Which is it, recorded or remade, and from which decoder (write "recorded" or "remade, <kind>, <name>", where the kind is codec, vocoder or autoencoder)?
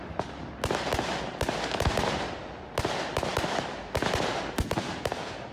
recorded